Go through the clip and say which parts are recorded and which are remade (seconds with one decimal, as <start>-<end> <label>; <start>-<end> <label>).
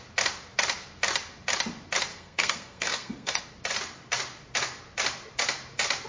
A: 0.0-2.1 recorded; 2.1-3.4 remade; 3.4-6.1 recorded